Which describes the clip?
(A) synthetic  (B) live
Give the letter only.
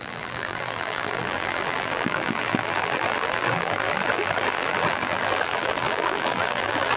A